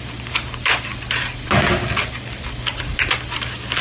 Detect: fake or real real